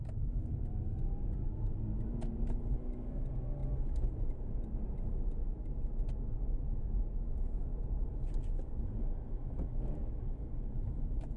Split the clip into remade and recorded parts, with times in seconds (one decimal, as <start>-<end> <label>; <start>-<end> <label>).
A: 0.0-2.6 remade; 2.6-3.2 recorded; 3.2-3.6 remade; 3.6-7.1 recorded; 7.1-8.1 remade; 8.1-10.6 recorded; 10.6-11.4 remade